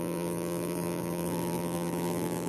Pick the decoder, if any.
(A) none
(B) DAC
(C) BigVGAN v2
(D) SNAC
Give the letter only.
C